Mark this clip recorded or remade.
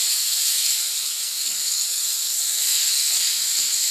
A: remade